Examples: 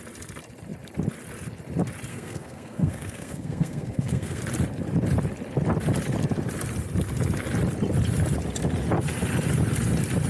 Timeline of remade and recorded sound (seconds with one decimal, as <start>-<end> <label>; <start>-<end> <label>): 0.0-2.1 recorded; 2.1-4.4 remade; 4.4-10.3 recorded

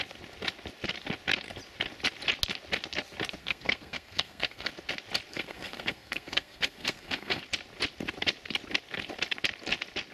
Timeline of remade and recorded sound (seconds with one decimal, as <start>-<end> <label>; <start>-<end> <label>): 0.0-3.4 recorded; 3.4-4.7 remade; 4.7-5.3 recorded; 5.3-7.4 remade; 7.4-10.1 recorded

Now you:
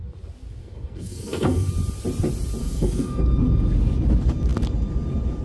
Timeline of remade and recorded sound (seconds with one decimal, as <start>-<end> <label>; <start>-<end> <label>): 0.0-0.6 recorded; 0.6-1.7 remade; 1.7-2.6 recorded; 2.6-3.2 remade; 3.2-5.4 recorded

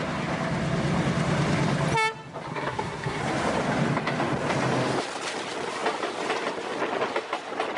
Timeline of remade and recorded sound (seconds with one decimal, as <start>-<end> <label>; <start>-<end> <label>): 0.0-2.5 recorded; 2.5-3.2 remade; 3.2-7.8 recorded

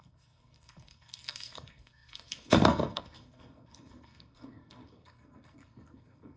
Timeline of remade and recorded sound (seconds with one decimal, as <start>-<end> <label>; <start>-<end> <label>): 0.0-6.4 remade

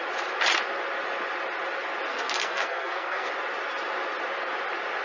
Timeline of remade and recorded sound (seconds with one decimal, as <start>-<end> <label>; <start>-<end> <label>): 0.0-2.1 recorded; 2.1-3.3 remade; 3.3-5.0 recorded

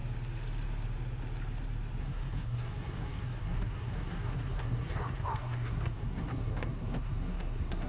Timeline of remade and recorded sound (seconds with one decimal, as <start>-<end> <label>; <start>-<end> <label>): 0.0-2.0 recorded; 2.0-7.9 remade